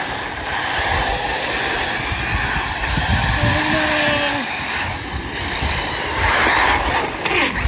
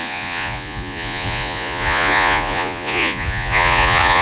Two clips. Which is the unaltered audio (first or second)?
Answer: first